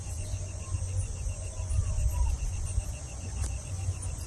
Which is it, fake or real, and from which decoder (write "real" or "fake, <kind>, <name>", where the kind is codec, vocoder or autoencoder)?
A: fake, vocoder, Vocos